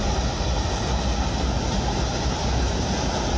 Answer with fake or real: real